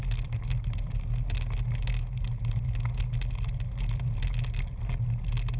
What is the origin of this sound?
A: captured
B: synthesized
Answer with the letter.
A